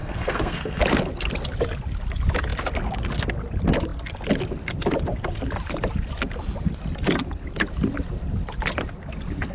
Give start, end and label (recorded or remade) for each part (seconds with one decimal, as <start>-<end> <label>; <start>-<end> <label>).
0.0-0.8 remade; 0.8-9.5 recorded